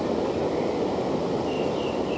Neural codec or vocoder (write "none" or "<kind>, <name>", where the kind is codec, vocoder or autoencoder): none